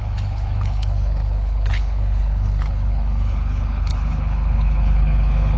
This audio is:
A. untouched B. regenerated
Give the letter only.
B